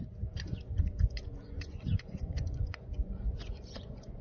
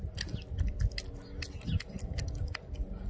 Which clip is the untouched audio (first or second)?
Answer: second